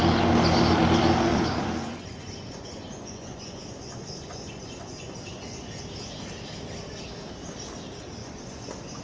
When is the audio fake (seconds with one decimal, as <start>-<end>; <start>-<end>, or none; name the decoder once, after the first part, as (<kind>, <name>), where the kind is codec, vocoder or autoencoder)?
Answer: 1.3-5.8 (vocoder, Vocos); 8.2-9.0